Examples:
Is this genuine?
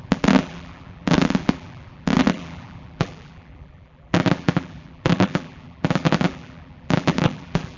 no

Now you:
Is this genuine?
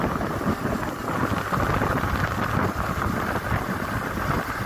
yes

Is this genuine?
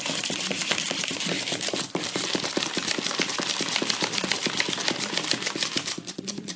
no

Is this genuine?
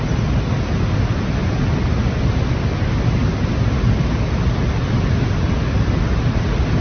yes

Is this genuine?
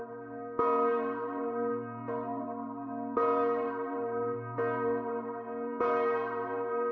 no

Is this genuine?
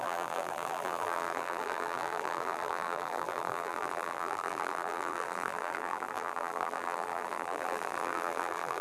no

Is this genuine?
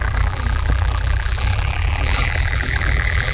no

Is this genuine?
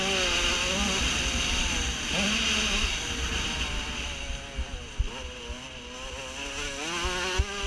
yes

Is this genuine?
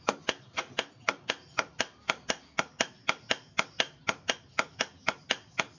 yes